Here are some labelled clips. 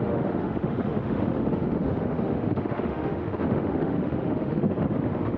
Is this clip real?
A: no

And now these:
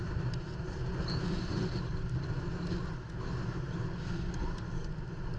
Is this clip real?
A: yes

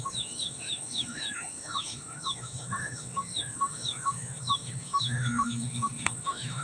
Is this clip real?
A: no